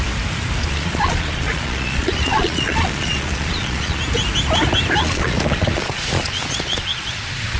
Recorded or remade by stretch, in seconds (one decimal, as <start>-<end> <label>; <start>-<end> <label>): 0.0-0.6 recorded; 0.6-4.0 remade; 4.0-5.0 recorded; 5.0-7.6 remade